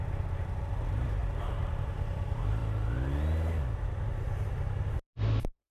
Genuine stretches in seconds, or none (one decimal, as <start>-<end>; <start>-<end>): 1.2-1.8; 2.6-4.9